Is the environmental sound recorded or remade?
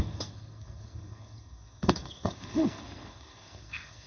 remade